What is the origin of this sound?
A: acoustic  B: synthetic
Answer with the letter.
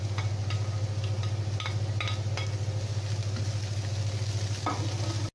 A